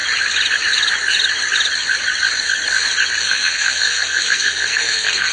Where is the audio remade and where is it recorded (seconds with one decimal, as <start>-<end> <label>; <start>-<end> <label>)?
0.0-3.2 recorded; 3.2-5.3 remade

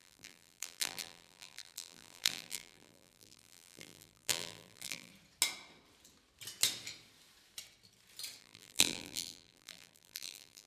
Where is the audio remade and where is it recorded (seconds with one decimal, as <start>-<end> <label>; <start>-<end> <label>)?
0.0-5.1 remade; 5.1-8.4 recorded; 8.4-10.7 remade

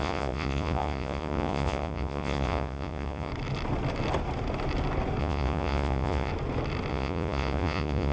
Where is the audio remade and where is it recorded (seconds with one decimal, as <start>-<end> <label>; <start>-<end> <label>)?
0.0-3.3 remade; 3.3-5.2 recorded; 5.2-6.3 remade; 6.3-6.9 recorded; 6.9-8.1 remade

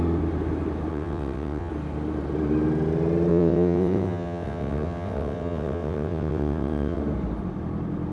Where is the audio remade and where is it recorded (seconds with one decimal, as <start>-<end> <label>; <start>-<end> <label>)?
0.0-0.9 recorded; 0.9-1.7 remade; 1.7-3.3 recorded; 3.3-7.0 remade; 7.0-8.1 recorded

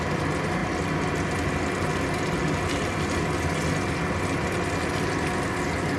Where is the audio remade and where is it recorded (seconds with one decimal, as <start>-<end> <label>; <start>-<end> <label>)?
0.0-6.0 recorded

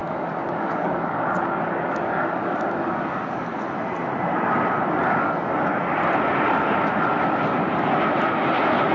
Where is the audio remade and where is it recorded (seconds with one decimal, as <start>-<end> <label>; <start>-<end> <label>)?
0.0-3.5 remade; 3.5-5.1 recorded; 5.1-5.8 remade; 5.8-8.9 recorded

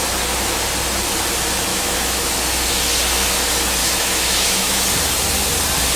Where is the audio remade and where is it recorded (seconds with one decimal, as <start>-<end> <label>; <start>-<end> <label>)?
0.0-1.7 recorded; 1.7-2.3 remade; 2.3-3.8 recorded; 3.8-4.8 remade; 4.8-6.0 recorded

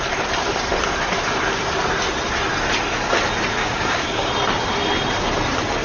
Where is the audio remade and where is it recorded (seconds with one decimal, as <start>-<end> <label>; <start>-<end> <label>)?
0.0-3.6 recorded; 3.6-4.3 remade; 4.3-5.8 recorded